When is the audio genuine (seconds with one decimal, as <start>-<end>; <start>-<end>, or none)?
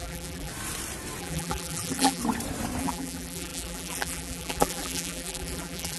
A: 0.5-1.2; 2.2-2.8